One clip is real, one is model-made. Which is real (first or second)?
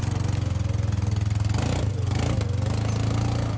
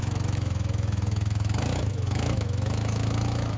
first